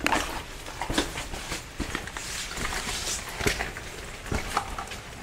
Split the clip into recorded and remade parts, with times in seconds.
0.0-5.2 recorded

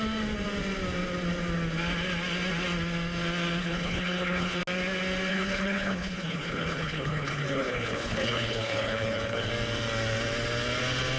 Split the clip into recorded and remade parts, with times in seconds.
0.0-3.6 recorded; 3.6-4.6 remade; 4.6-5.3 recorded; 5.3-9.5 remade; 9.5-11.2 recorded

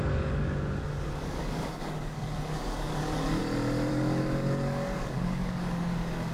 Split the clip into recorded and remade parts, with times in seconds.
0.0-3.4 remade; 3.4-3.9 recorded; 3.9-6.3 remade

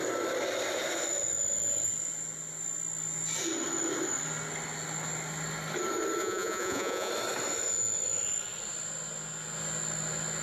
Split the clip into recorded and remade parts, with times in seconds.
0.0-6.2 recorded; 6.2-7.1 remade; 7.1-10.4 recorded

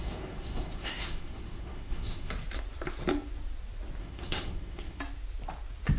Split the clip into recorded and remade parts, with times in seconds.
0.0-2.3 remade; 2.3-4.0 recorded; 4.0-5.0 remade; 5.0-6.0 recorded

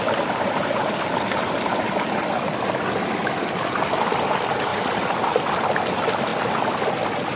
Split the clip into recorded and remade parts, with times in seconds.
0.0-4.7 recorded; 4.7-5.2 remade; 5.2-7.4 recorded